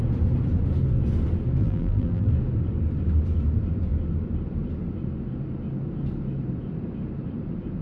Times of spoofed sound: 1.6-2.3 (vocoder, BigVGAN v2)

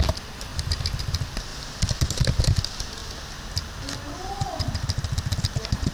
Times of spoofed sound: 0.0-0.5 (vocoder, BigVGAN v2); 1.0-3.0; 4.3-5.9